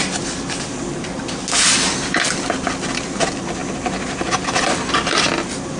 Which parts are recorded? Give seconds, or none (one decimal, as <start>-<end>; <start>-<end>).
0.0-5.8